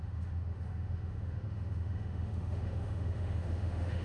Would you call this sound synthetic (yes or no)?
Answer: yes